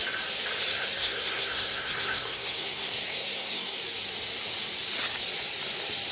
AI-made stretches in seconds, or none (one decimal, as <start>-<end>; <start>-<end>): 0.7-3.8